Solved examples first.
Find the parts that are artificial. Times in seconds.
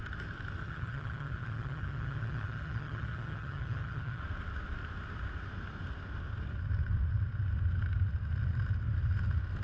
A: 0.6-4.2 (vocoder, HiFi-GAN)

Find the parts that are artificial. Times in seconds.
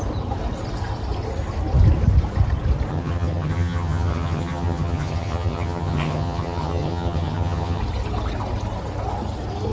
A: 2.9-7.8 (vocoder, HiFi-GAN)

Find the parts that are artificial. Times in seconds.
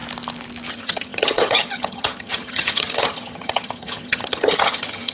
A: 0.7-5.1 (vocoder, HiFi-GAN)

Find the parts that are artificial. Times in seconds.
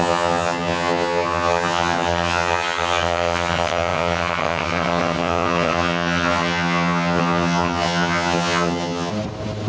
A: 0.0-9.1 (vocoder, HiFi-GAN)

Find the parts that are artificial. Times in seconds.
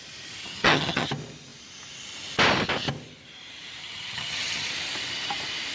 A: 0.4-1.1 (vocoder, HiFi-GAN); 3.8-4.7